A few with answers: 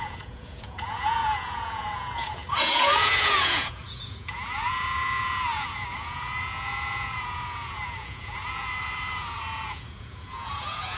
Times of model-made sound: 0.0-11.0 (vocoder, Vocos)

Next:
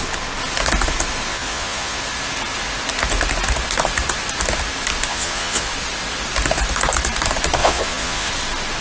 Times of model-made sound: 1.3-2.0 (vocoder, Vocos); 5.1-5.7; 7.6-8.3

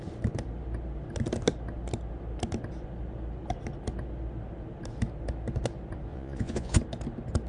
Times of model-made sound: 6.1-6.8 (vocoder, Vocos)

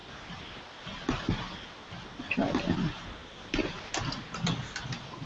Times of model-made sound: none

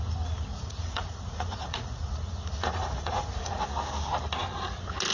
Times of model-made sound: 0.5-3.6 (vocoder, Vocos)

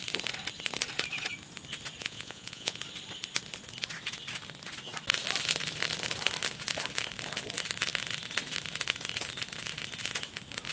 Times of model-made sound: 2.0-2.8 (vocoder, Vocos)

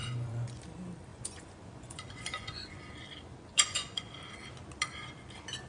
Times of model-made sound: 0.0-0.6 (vocoder, Vocos); 1.1-2.8; 3.5-4.1

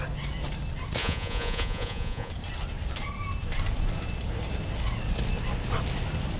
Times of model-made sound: 1.0-2.3 (vocoder, Vocos)